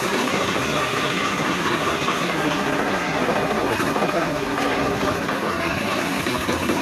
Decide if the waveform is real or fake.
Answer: fake